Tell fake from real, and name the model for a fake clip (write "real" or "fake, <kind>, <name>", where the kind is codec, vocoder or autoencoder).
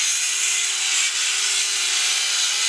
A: real